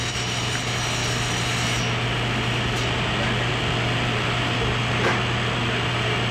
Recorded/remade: recorded